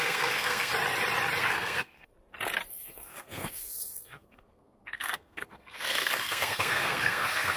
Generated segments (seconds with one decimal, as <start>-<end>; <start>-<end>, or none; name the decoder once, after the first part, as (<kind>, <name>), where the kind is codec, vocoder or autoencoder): 0.0-0.7 (codec, SNAC); 1.4-2.1; 2.7-7.6